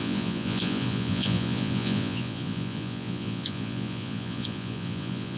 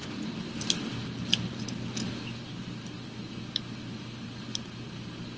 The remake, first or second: first